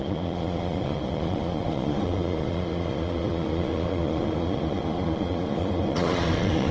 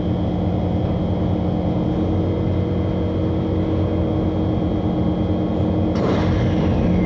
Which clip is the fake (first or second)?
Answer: first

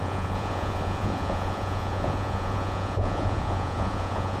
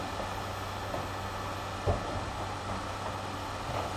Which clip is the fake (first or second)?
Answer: first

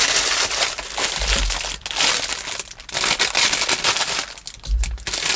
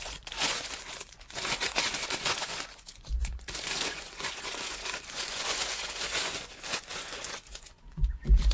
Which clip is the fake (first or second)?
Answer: second